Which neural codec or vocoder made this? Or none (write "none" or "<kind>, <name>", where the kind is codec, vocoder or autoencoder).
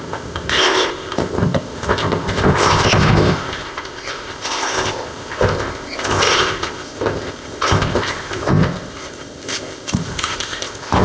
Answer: codec, ZipCodec